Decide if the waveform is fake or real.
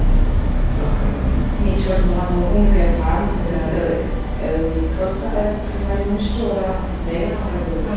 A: real